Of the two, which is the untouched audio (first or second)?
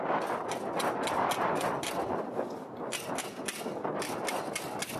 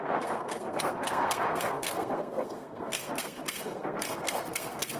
first